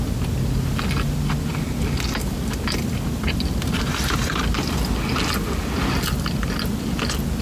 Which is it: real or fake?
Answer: real